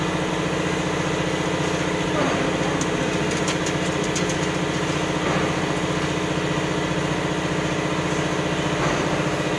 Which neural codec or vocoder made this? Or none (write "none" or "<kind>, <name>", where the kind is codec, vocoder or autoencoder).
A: none